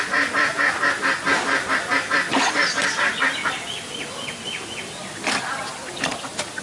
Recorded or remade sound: recorded